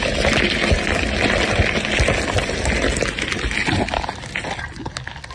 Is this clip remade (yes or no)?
no